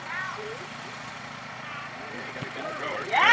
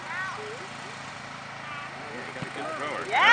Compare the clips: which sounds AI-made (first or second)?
first